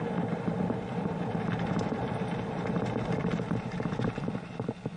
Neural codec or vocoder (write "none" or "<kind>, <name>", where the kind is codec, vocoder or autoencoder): none